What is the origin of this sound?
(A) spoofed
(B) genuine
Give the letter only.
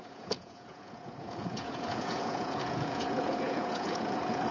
A